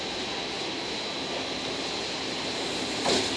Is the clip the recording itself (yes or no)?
yes